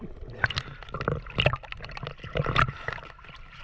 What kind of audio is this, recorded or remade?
recorded